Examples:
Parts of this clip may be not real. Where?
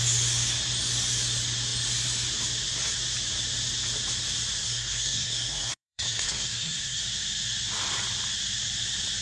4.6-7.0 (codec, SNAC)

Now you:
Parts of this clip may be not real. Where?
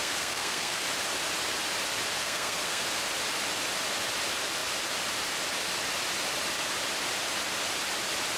0.0-0.8 (codec, SNAC); 2.2-2.8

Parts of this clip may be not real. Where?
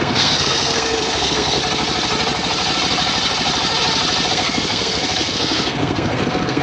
0.0-1.6 (codec, SNAC); 4.3-6.6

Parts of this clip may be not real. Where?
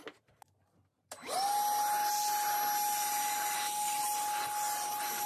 none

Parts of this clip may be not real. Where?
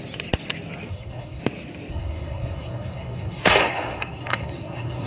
0.9-1.4 (codec, SNAC); 1.9-5.1